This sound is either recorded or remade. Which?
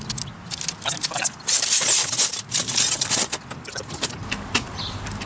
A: recorded